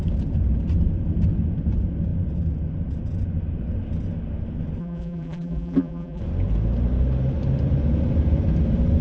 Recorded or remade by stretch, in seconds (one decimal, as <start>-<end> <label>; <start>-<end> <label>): 0.0-4.8 recorded; 4.8-6.2 remade; 6.2-9.0 recorded